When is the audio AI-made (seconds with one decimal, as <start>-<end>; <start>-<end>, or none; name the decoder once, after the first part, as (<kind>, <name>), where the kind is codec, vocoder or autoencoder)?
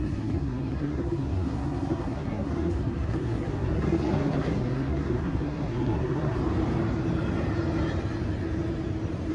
0.0-6.4 (codec, SNAC)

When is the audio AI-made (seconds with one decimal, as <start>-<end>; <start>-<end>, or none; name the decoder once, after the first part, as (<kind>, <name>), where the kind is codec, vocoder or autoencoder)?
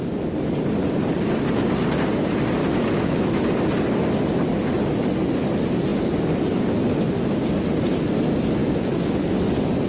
2.6-3.4 (autoencoder, DAC-VAE); 8.6-9.5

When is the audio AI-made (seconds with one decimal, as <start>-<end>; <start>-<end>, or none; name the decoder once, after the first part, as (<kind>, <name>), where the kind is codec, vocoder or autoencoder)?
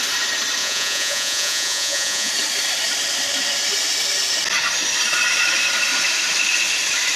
0.6-2.3 (vocoder, Vocos)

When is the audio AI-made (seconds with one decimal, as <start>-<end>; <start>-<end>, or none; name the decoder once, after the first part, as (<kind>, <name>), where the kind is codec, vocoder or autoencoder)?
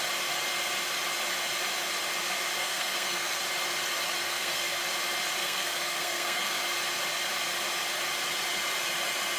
2.6-3.4 (codec, SNAC); 4.2-4.8; 5.4-6.6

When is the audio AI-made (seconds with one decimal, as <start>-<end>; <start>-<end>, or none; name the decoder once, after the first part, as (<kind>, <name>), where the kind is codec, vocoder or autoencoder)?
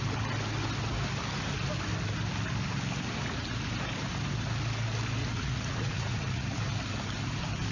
5.2-6.6 (vocoder, Vocos)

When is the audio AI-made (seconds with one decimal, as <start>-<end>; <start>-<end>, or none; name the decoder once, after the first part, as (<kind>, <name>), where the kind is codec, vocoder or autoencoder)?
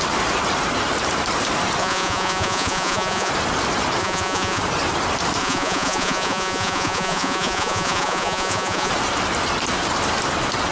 1.8-3.3 (vocoder, Vocos); 4.0-4.6; 5.4-8.9